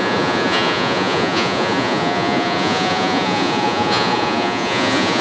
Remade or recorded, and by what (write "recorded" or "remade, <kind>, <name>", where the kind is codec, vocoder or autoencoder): remade, vocoder, Vocos